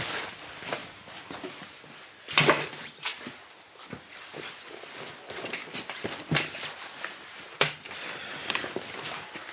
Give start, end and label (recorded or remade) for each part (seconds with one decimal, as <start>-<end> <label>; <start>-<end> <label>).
0.0-0.8 recorded; 0.8-1.4 remade; 1.4-9.5 recorded